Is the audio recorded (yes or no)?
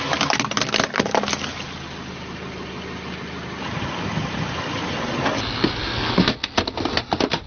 yes